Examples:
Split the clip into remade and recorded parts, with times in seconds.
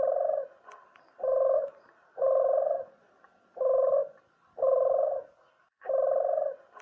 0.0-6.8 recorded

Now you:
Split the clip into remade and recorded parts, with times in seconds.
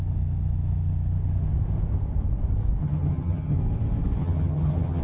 0.0-2.8 recorded; 2.8-3.6 remade; 3.6-4.2 recorded; 4.2-5.0 remade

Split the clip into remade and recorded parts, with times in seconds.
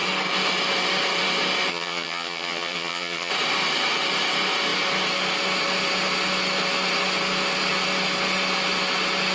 0.0-1.7 recorded; 1.7-3.3 remade; 3.3-9.3 recorded